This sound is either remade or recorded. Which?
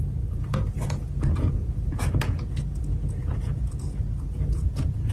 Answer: remade